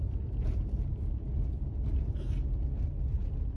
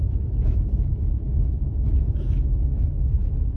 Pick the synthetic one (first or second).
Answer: second